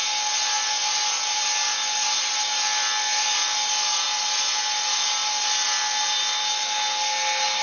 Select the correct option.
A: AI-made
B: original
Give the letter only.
B